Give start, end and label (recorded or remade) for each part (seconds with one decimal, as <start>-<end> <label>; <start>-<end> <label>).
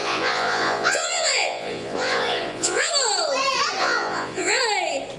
0.0-2.9 remade; 2.9-3.8 recorded; 3.8-4.6 remade; 4.6-5.2 recorded